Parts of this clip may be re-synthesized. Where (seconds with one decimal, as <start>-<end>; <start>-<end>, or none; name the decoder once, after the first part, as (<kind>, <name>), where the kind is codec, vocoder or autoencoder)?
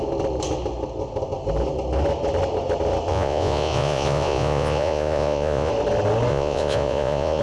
3.1-5.7 (vocoder, Vocos); 6.3-7.4